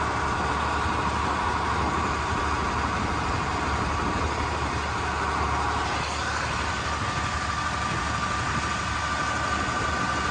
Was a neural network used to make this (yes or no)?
no